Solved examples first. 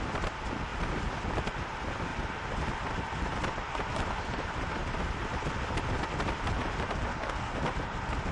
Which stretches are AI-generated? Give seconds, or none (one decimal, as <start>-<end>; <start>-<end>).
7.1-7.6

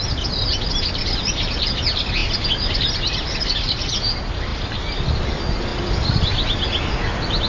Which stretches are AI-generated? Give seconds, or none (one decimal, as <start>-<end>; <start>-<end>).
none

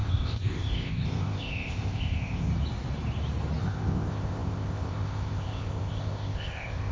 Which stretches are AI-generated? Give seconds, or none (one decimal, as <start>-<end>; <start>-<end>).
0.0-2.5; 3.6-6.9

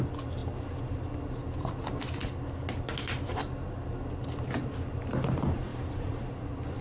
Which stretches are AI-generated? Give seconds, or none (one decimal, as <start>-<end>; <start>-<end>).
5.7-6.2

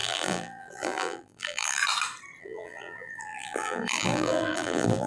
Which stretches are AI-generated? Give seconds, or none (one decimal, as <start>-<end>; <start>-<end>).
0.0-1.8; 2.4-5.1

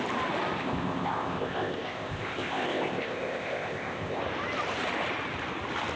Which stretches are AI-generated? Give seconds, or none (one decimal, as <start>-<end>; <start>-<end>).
0.6-4.2

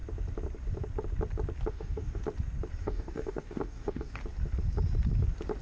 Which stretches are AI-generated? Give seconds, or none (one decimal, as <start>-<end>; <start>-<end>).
1.7-2.2; 2.8-4.2